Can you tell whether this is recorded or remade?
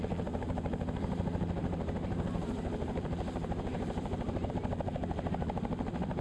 remade